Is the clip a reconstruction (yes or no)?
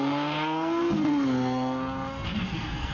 yes